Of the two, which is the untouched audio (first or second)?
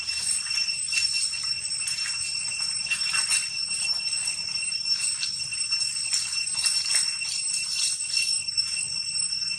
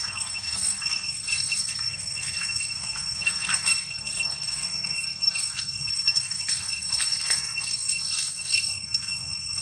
first